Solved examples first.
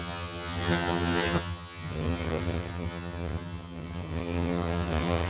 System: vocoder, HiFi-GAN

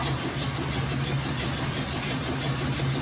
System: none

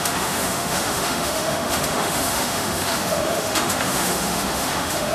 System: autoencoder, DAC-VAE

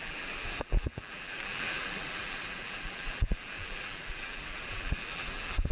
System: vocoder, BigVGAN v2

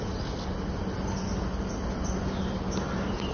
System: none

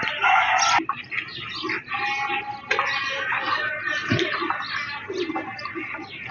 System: none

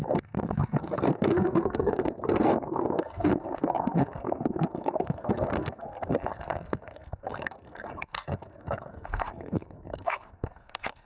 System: codec, SNAC